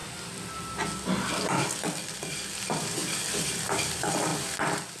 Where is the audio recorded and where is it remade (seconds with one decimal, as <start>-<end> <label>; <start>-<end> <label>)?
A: 0.0-1.3 recorded; 1.3-4.3 remade; 4.3-5.0 recorded